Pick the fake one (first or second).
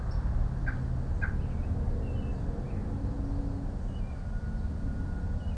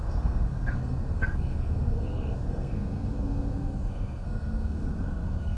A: second